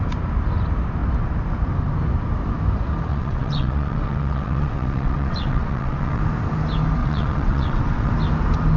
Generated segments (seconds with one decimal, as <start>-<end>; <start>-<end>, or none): 3.1-6.2; 7.0-8.1

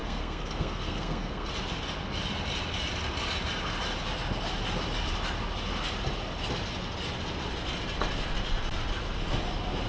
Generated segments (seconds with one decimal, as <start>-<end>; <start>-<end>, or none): 0.0-1.5